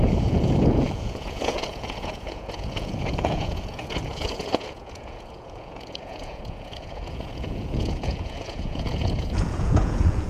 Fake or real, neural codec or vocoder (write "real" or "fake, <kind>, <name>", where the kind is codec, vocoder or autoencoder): fake, vocoder, Vocos